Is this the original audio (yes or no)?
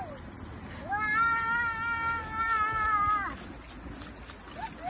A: yes